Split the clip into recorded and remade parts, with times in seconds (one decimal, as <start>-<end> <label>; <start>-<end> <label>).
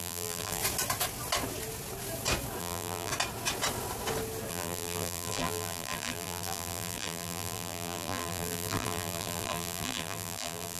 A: 0.0-0.6 remade; 0.6-2.6 recorded; 2.6-3.1 remade; 3.1-4.5 recorded; 4.5-10.8 remade